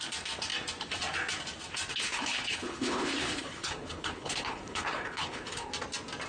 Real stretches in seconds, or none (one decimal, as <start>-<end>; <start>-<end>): 0.0-1.9; 5.7-6.3